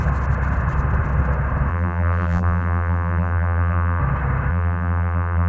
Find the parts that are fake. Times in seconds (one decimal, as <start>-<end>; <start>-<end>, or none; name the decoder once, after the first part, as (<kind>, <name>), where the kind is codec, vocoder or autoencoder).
1.7-4.0 (vocoder, BigVGAN v2); 4.5-5.5